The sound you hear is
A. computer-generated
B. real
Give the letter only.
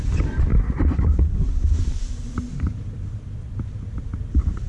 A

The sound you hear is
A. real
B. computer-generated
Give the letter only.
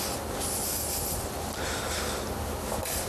A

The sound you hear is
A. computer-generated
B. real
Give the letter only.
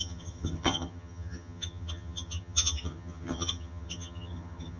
A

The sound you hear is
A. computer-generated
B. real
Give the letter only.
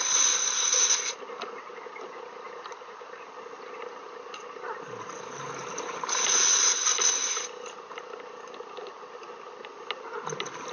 B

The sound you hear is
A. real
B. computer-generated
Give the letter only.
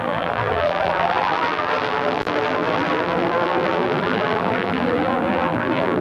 B